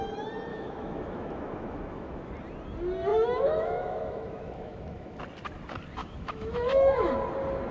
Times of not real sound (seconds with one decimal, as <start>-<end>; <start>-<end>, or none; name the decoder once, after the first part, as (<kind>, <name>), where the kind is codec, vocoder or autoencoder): 0.5-2.3 (autoencoder, DAC-VAE); 3.1-5.2; 6.0-7.1